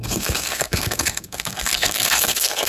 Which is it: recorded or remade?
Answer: remade